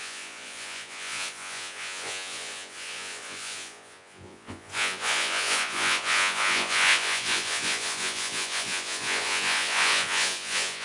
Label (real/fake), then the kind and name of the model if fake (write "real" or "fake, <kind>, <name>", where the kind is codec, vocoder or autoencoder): fake, vocoder, Vocos